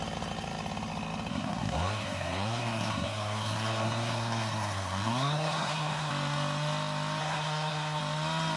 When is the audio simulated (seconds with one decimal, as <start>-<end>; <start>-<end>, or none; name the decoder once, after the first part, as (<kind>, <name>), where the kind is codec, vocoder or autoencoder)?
1.3-6.1 (codec, SNAC); 7.2-8.0